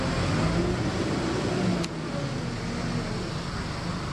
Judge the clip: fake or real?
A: real